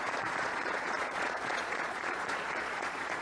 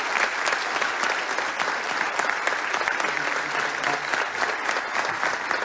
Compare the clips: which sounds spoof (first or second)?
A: first